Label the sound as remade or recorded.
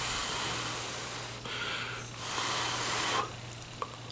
recorded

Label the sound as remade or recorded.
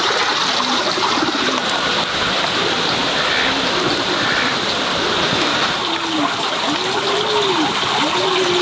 recorded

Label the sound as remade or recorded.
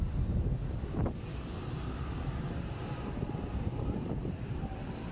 remade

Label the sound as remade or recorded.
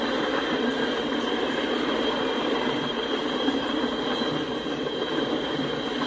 remade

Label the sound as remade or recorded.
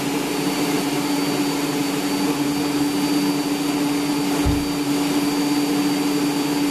recorded